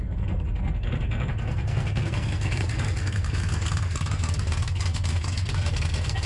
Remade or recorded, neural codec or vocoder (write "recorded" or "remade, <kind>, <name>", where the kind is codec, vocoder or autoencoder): remade, codec, SNAC